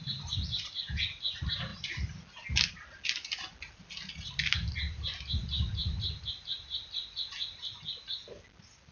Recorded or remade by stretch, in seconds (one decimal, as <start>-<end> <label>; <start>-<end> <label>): 0.0-8.9 recorded